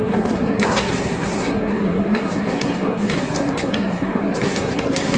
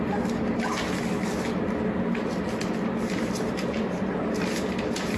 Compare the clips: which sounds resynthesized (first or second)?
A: first